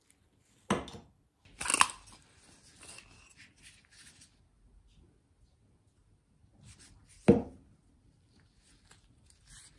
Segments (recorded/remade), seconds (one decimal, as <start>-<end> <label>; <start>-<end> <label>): 0.0-9.8 recorded